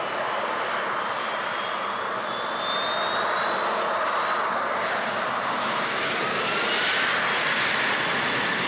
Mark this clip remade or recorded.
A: recorded